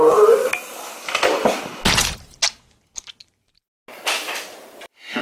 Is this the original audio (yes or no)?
yes